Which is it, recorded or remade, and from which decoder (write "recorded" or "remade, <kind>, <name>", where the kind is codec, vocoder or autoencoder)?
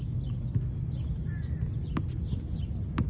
recorded